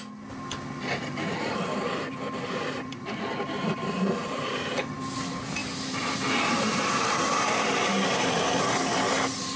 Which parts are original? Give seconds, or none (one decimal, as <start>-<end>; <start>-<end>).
0.0-3.6; 4.9-5.6; 8.7-9.6